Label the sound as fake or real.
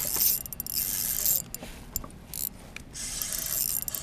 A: real